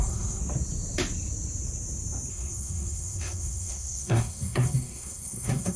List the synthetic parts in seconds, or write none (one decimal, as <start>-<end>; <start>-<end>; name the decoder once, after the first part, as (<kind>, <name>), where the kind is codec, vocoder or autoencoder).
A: 0.0-0.4 (codec, SNAC); 2.3-5.8